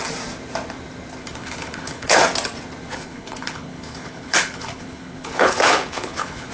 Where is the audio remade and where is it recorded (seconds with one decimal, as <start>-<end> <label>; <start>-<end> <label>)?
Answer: 0.0-1.2 recorded; 1.2-2.2 remade; 2.2-2.9 recorded; 2.9-6.5 remade